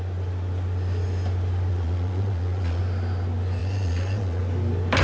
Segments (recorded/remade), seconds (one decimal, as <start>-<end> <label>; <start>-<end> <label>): 0.0-1.7 recorded; 1.7-2.8 remade; 2.8-3.6 recorded; 3.6-4.4 remade; 4.4-5.0 recorded